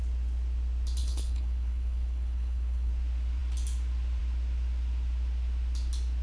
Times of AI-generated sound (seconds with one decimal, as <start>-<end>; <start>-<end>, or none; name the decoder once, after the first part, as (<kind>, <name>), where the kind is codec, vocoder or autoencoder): 1.0-2.9 (codec, HILCodec)